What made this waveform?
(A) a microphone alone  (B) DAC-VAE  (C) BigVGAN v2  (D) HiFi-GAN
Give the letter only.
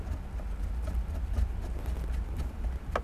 A